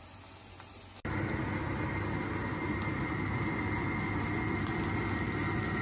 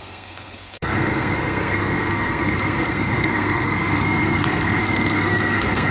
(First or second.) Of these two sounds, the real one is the first